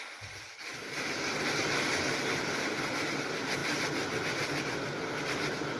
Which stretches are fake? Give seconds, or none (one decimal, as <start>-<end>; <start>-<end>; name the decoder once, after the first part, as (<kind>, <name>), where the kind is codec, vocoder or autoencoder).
0.8-1.6 (vocoder, BigVGAN v2)

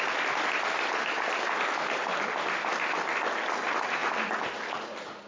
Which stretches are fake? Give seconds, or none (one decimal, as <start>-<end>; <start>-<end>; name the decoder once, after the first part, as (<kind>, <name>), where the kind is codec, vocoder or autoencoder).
none

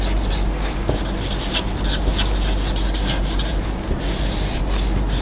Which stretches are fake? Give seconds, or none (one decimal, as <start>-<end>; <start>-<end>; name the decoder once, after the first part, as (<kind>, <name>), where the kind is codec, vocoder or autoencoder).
3.5-4.6 (vocoder, BigVGAN v2)

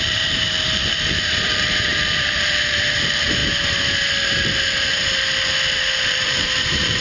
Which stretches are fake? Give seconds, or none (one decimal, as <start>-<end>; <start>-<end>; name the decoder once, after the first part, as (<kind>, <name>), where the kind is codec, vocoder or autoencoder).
0.0-3.4 (vocoder, BigVGAN v2); 6.1-7.0